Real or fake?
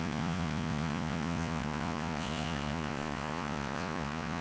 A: fake